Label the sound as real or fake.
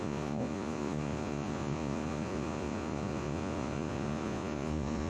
fake